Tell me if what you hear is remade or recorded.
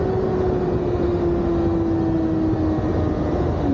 recorded